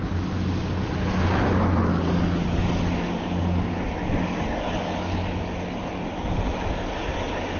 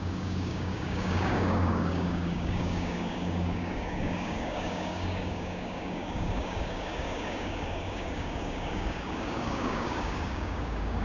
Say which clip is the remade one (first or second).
second